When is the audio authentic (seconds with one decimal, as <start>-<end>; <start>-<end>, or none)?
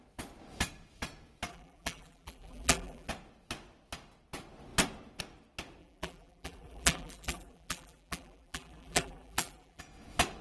0.0-1.5; 3.1-5.8; 9.8-10.4